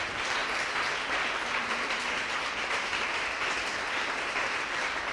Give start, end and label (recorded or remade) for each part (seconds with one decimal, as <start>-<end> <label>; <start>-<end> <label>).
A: 0.0-0.4 remade; 0.4-1.6 recorded; 1.6-3.7 remade; 3.7-4.3 recorded; 4.3-5.1 remade